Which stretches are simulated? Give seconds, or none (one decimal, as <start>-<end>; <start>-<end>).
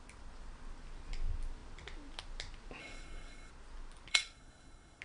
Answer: 2.8-3.5; 4.1-5.0